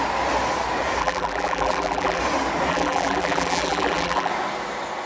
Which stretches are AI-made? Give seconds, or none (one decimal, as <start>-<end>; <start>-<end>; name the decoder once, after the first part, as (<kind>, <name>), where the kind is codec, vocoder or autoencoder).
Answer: 1.0-2.2 (vocoder, BigVGAN v2); 2.7-4.3